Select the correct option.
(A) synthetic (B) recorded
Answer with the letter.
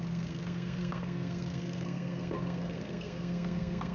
A